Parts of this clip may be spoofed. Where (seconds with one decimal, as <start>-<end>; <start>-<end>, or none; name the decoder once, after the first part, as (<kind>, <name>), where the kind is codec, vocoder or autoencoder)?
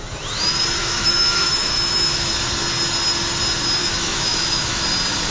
0.8-2.3 (autoencoder, DAC-VAE); 3.8-4.8